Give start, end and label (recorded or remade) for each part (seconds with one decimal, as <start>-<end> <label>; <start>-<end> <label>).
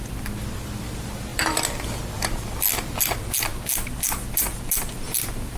0.0-1.3 recorded; 1.3-1.9 remade; 1.9-5.6 recorded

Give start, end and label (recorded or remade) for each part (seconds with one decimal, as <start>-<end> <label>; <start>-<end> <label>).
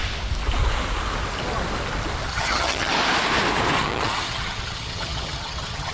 0.0-2.3 recorded; 2.3-2.9 remade; 2.9-3.8 recorded; 3.8-5.9 remade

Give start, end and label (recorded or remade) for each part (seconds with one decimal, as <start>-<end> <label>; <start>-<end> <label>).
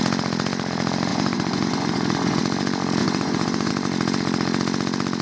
0.0-1.1 recorded; 1.1-2.4 remade; 2.4-3.0 recorded; 3.0-3.7 remade; 3.7-5.2 recorded